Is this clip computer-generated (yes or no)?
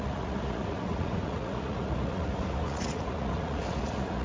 yes